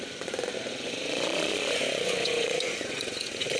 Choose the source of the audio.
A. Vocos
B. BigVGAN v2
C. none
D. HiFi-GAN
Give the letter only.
A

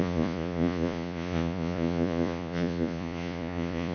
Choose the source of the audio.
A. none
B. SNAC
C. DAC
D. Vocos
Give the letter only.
D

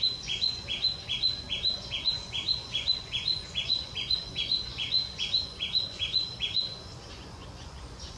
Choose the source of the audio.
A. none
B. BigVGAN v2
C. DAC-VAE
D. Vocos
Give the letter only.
D